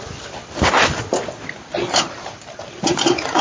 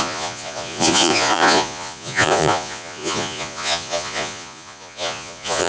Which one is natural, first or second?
first